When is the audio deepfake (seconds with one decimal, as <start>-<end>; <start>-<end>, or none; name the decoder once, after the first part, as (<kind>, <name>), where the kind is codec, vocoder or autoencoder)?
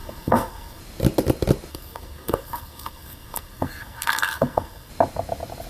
0.0-0.8 (codec, SNAC); 1.7-4.9